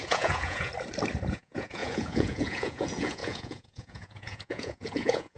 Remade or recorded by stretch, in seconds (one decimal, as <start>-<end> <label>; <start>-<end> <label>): 0.0-0.7 remade; 0.7-1.3 recorded; 1.3-5.4 remade